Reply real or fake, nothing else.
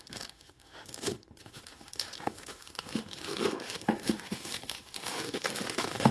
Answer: fake